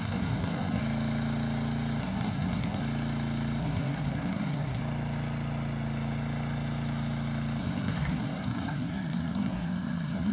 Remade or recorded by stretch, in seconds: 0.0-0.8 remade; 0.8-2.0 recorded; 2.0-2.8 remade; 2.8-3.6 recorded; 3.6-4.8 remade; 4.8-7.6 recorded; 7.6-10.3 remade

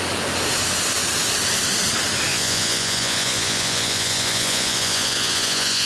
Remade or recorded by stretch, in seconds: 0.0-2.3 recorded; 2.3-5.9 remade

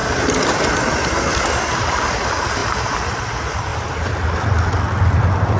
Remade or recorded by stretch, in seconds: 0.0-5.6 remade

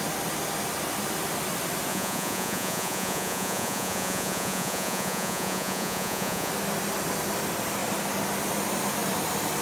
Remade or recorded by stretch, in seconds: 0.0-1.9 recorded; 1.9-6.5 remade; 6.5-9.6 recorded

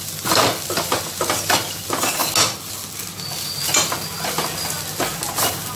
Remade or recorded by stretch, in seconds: 0.0-5.8 recorded

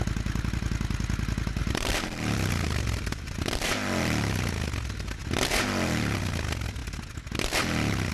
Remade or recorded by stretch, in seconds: 0.0-1.6 recorded; 1.6-3.7 remade; 3.7-8.1 recorded

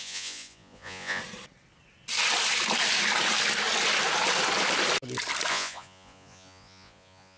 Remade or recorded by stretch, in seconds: 0.0-1.2 remade; 1.2-5.5 recorded; 5.5-7.4 remade